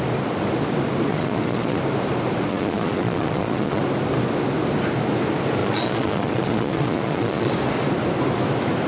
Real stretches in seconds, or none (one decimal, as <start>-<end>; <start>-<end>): 0.0-1.1; 1.8-2.5; 3.8-5.6; 7.5-8.9